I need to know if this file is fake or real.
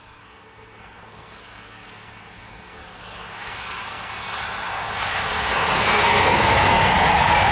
fake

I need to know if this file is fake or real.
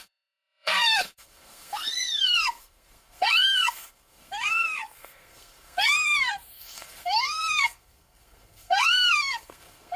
fake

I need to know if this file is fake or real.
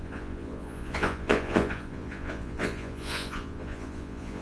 fake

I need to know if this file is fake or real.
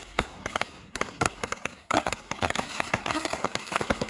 fake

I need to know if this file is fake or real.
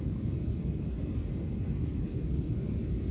fake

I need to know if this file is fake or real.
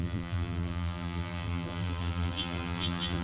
fake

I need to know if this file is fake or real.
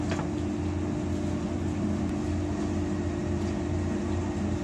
real